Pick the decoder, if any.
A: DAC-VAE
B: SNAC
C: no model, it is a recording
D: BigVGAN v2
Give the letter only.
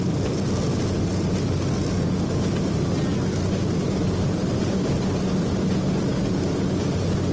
C